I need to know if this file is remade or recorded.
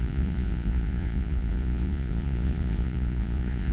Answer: remade